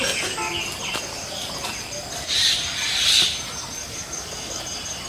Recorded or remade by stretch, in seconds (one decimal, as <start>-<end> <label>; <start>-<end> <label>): 0.0-3.8 recorded; 3.8-4.6 remade; 4.6-5.1 recorded